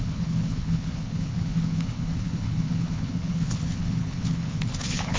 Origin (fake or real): fake